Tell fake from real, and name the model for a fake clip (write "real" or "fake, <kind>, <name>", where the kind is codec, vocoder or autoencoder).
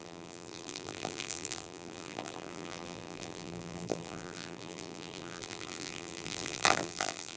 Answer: fake, vocoder, BigVGAN v2